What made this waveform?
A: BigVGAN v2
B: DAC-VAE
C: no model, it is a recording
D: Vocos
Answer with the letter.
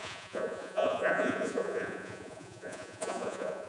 D